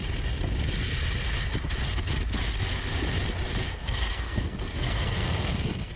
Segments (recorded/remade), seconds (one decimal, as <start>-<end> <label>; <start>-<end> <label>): 0.0-3.6 recorded; 3.6-6.0 remade